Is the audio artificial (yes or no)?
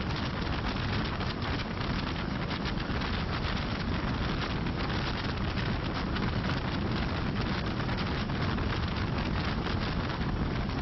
no